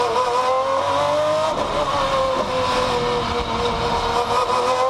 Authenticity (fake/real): real